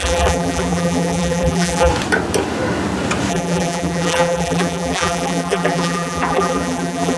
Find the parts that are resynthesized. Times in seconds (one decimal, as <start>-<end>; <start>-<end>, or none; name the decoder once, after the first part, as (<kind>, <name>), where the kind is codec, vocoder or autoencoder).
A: 0.0-1.9 (vocoder, BigVGAN v2); 3.3-7.2